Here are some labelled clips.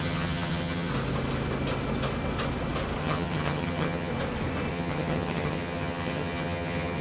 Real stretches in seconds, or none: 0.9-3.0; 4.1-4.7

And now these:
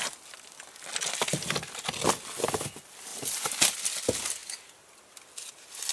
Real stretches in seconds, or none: 0.0-5.9

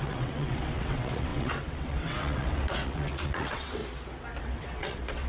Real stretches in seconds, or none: 3.8-4.4

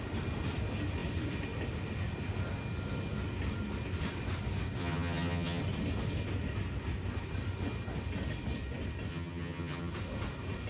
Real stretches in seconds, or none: 0.0-4.8; 5.6-9.1; 9.9-10.7

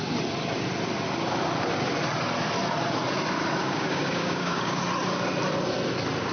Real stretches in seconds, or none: 0.0-3.6; 4.8-6.3

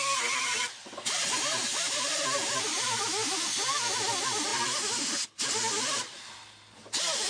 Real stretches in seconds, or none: 0.0-7.3

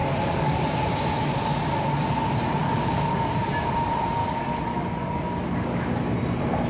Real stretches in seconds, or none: 0.6-2.6; 3.5-4.2; 6.0-6.7

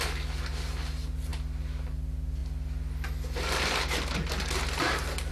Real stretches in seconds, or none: 0.0-5.3